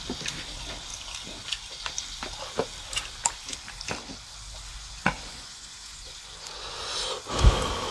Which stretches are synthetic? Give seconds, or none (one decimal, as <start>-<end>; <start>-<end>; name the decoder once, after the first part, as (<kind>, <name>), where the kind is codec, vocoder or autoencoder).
4.7-7.0 (vocoder, Vocos)